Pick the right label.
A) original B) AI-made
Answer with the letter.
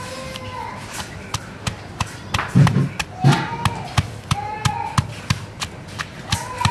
A